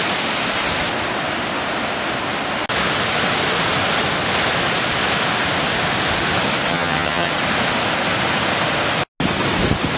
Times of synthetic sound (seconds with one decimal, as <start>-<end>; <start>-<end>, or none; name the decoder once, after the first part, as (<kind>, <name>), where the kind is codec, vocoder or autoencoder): 6.7-7.3 (vocoder, HiFi-GAN)